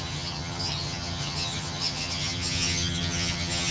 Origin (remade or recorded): remade